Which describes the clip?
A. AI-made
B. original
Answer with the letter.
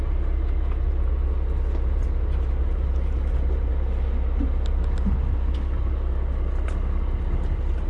B